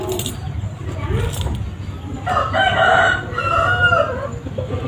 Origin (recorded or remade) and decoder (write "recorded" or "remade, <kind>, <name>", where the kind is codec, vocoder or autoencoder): recorded